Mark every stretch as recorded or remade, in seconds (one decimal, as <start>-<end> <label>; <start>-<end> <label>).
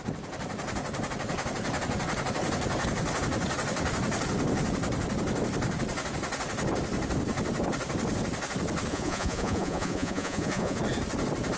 0.0-8.9 recorded; 8.9-10.8 remade; 10.8-11.6 recorded